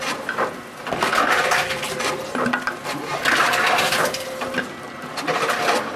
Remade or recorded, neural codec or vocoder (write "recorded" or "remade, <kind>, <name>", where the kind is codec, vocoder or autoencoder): recorded